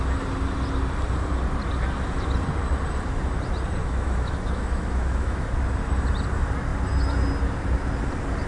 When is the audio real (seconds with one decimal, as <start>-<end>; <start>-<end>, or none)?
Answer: 0.0-3.8; 5.5-8.5